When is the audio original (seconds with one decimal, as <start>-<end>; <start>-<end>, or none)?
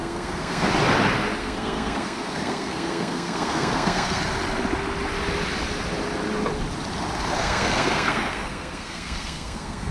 0.7-1.4; 4.2-7.4